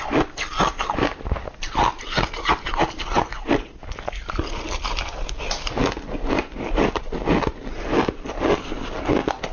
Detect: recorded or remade recorded